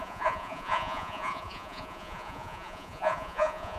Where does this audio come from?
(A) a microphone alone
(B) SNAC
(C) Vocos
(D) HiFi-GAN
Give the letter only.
C